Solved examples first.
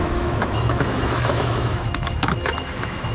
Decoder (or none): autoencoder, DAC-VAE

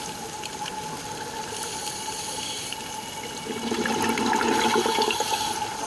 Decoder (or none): none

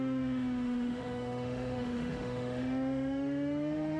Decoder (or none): autoencoder, DAC-VAE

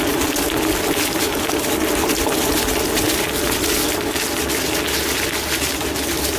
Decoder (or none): none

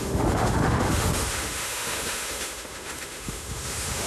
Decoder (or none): autoencoder, DAC-VAE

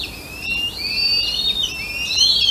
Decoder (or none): none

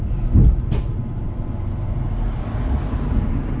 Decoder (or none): none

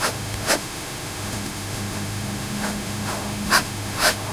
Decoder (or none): autoencoder, DAC-VAE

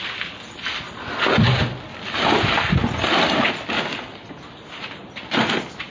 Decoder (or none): none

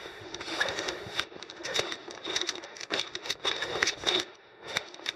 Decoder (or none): autoencoder, DAC-VAE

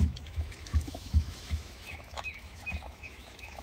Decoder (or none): autoencoder, DAC-VAE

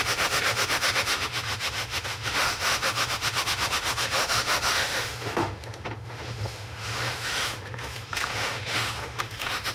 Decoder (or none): autoencoder, DAC-VAE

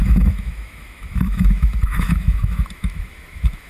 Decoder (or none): autoencoder, DAC-VAE